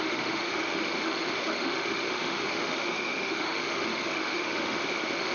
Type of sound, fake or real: fake